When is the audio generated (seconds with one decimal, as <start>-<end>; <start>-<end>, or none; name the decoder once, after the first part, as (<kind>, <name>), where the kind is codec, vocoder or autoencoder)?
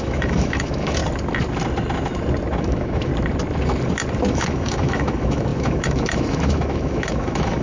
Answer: 0.0-1.0 (autoencoder, DAC-VAE); 2.6-3.1; 4.3-7.6